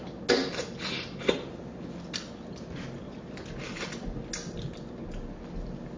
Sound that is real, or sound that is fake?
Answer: real